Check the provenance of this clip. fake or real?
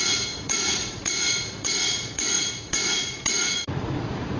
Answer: fake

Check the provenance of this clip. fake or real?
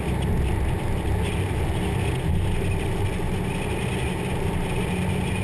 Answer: real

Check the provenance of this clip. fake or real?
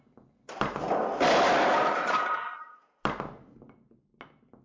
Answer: real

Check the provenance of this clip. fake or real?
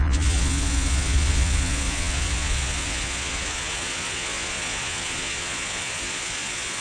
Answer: fake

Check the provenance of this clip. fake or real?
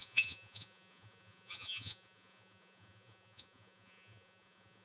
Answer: fake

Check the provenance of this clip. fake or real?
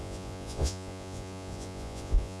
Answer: fake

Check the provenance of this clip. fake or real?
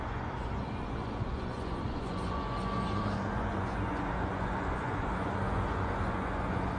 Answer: fake